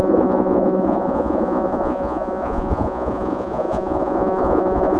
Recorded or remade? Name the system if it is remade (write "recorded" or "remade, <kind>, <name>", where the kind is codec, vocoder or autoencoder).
remade, vocoder, Vocos